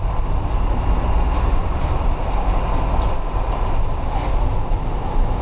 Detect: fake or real real